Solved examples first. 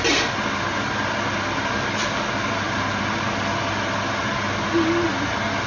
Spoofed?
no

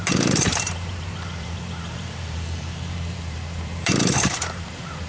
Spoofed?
yes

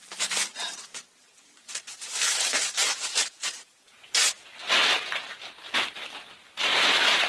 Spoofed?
yes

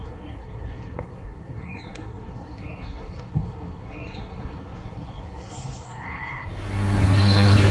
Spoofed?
yes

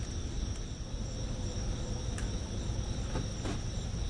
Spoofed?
no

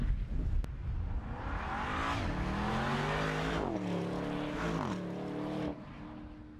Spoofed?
no